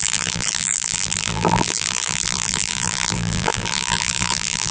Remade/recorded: remade